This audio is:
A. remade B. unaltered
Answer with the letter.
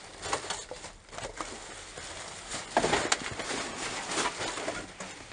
B